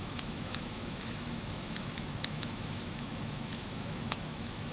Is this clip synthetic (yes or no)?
yes